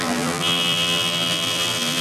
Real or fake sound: fake